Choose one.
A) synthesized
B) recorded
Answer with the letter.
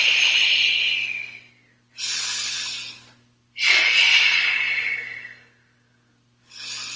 B